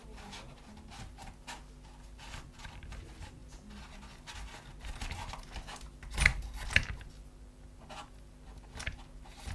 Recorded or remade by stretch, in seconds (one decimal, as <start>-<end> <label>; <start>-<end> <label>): 0.0-0.7 remade; 0.7-9.5 recorded